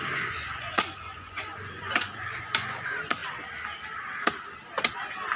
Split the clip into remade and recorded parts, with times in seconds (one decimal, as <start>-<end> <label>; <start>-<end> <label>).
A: 0.0-3.2 remade; 3.2-5.4 recorded